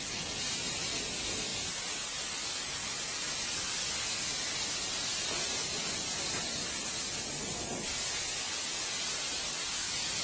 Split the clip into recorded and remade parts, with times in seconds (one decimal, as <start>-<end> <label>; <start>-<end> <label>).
0.0-10.2 recorded